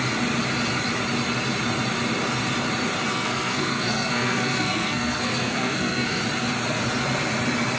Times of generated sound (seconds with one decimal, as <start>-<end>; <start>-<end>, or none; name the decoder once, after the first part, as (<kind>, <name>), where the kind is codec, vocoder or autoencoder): 3.1-6.2 (codec, SNAC)